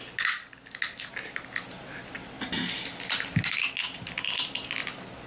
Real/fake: real